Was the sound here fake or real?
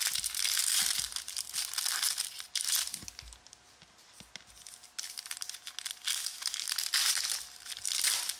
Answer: real